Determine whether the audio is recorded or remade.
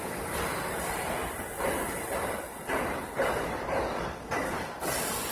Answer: recorded